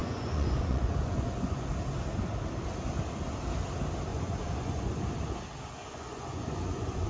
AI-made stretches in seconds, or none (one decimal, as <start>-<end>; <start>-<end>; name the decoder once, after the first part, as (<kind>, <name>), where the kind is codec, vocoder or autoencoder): 0.0-1.7 (vocoder, Vocos); 4.1-5.0; 5.8-7.1